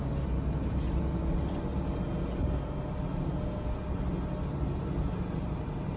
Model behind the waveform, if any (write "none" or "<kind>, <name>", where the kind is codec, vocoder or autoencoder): none